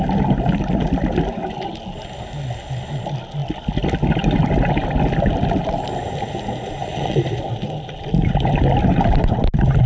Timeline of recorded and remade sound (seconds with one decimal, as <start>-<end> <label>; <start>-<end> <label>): 0.0-6.8 recorded; 6.8-7.4 remade; 7.4-9.9 recorded